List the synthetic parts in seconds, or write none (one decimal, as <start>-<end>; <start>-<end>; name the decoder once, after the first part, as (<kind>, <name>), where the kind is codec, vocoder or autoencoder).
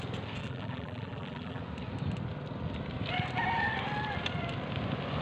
0.4-1.6 (vocoder, BigVGAN v2)